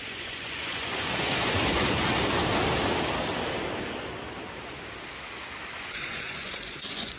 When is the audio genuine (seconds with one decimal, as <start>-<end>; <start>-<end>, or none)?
2.1-5.8